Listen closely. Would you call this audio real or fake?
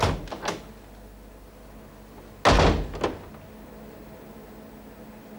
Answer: real